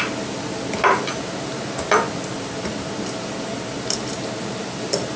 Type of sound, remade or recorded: recorded